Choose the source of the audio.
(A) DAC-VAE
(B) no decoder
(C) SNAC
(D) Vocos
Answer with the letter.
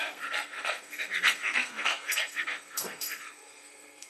C